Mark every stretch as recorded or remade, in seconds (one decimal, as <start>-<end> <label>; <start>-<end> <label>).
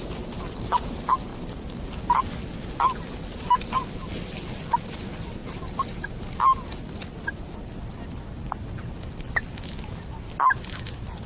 0.0-11.3 recorded